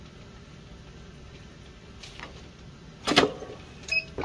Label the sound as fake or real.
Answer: real